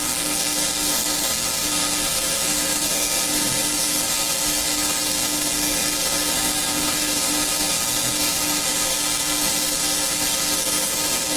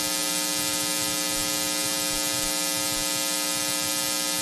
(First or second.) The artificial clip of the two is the first